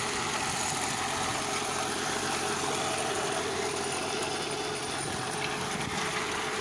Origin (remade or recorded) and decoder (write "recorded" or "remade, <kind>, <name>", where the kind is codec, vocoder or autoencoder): remade, vocoder, BigVGAN v2